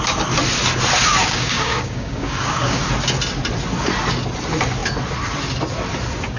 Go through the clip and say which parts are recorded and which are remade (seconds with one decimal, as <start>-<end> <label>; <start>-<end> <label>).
0.0-1.2 recorded; 1.2-2.8 remade; 2.8-6.4 recorded